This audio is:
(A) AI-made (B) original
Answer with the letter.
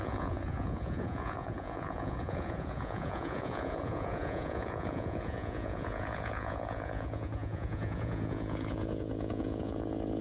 A